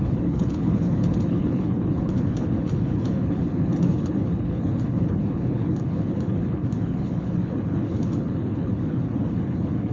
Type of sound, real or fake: fake